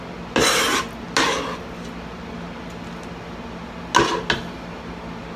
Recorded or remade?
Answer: recorded